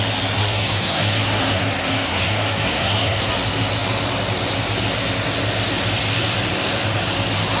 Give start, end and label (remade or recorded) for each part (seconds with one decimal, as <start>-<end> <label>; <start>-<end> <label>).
0.0-0.4 recorded; 0.4-3.3 remade; 3.3-7.6 recorded